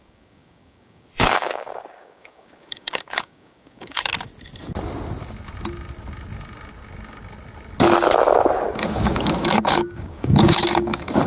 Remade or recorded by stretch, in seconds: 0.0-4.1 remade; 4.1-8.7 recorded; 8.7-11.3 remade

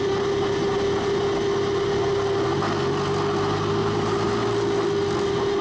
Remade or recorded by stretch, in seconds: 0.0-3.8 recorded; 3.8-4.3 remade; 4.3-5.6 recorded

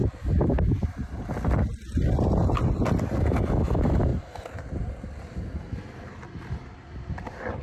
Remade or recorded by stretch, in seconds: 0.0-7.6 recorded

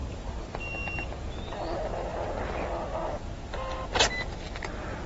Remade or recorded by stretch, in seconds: 0.0-0.7 remade; 0.7-5.1 recorded

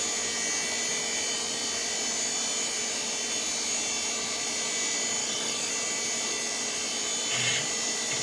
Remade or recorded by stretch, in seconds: 0.0-5.2 recorded; 5.2-5.7 remade; 5.7-8.2 recorded

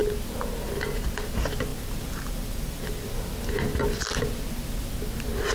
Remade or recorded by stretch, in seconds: 0.0-1.7 recorded; 1.7-5.0 remade; 5.0-5.5 recorded